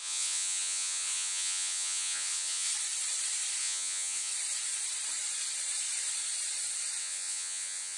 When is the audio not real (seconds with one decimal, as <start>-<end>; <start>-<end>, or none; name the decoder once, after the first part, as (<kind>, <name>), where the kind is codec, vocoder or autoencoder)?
0.0-2.7 (vocoder, Vocos); 3.6-4.3; 7.0-8.0